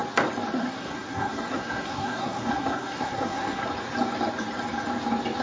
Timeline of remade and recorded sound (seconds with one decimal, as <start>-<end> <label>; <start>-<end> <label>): 0.0-0.5 recorded; 0.5-3.6 remade; 3.6-5.4 recorded